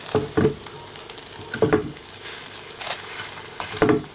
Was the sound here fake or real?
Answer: real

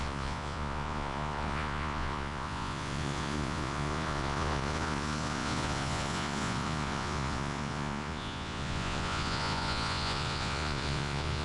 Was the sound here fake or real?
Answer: fake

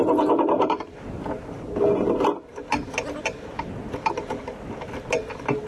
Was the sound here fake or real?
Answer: real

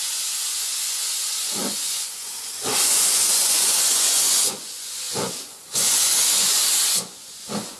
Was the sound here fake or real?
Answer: fake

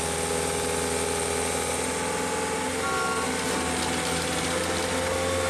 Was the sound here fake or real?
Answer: real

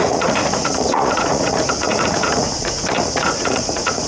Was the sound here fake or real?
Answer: fake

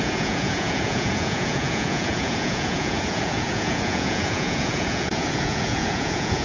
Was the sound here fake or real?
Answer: fake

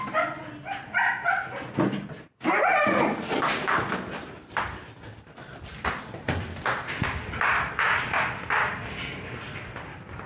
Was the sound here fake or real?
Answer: real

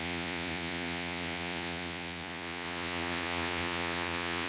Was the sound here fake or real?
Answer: fake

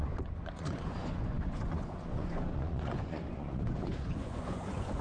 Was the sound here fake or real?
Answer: fake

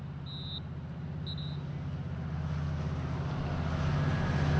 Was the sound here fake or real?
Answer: real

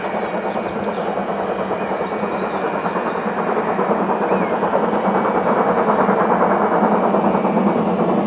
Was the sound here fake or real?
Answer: real